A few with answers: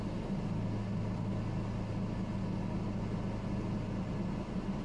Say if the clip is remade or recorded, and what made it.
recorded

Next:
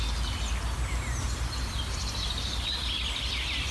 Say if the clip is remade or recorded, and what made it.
recorded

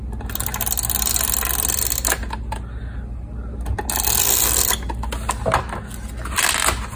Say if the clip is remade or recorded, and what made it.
recorded